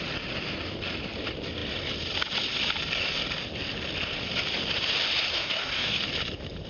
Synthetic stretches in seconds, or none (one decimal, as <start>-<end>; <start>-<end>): 5.3-6.0